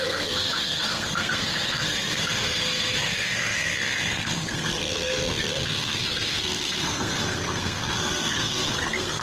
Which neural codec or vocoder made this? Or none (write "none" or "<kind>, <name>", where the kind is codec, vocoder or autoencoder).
codec, SNAC